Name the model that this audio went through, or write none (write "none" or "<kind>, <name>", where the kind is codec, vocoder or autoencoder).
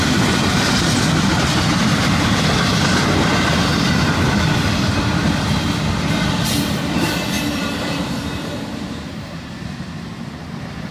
vocoder, BigVGAN v2